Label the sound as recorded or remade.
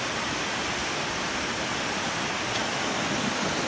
remade